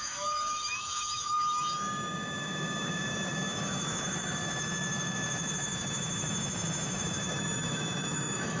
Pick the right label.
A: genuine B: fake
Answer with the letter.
B